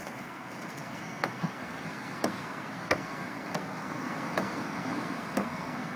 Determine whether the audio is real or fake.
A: fake